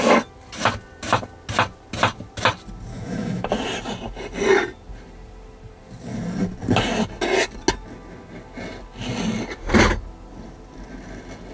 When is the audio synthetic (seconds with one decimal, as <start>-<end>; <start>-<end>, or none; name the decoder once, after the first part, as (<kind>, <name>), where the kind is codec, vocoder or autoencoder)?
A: 2.9-3.5 (autoencoder, DAC-VAE)